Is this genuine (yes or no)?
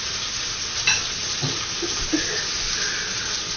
yes